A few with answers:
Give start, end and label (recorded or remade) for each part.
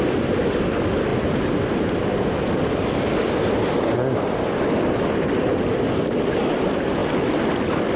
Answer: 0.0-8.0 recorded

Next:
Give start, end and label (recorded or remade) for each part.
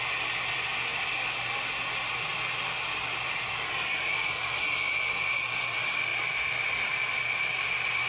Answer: 0.0-8.1 recorded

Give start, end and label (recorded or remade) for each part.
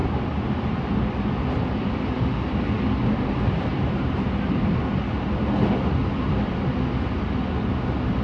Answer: 0.0-8.2 recorded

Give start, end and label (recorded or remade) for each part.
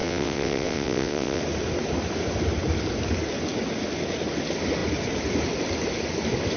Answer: 0.0-1.4 remade; 1.4-6.6 recorded